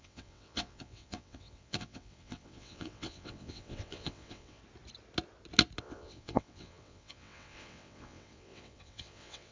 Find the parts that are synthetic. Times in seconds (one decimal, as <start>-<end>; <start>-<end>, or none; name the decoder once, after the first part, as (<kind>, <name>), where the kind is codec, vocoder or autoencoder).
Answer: 0.0-4.6 (vocoder, WaveNeXt); 5.8-9.5